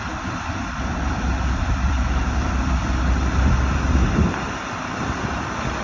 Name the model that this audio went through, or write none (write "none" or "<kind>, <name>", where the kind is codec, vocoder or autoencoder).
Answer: vocoder, BigVGAN v2